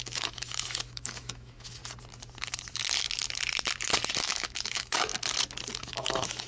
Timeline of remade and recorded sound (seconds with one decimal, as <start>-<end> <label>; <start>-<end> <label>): 0.0-1.8 remade; 1.8-4.2 recorded; 4.2-5.1 remade; 5.1-5.8 recorded; 5.8-6.5 remade